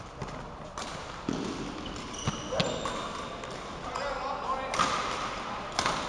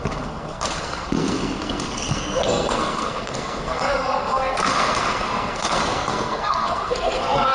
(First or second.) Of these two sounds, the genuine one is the first